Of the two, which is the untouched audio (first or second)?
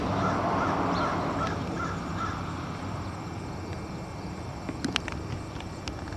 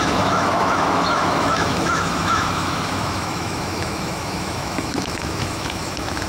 first